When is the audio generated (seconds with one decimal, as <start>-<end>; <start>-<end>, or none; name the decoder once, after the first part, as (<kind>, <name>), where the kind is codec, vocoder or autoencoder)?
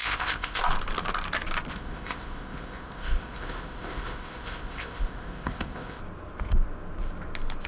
0.0-0.6 (codec, ZipCodec); 1.7-6.0